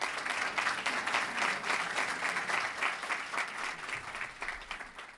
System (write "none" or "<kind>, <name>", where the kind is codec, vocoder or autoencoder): none